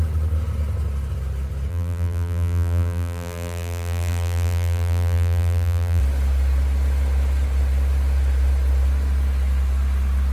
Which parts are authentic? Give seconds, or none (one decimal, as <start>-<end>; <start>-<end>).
0.0-1.7; 6.0-10.3